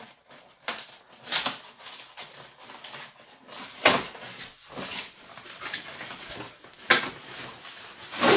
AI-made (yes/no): no